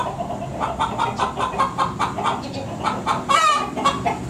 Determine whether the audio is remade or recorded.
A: recorded